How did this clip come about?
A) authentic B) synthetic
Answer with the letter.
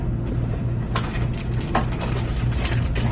A